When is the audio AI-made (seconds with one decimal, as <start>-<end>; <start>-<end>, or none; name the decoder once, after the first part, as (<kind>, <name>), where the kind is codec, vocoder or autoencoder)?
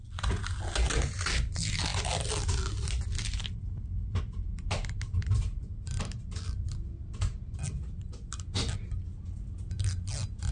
none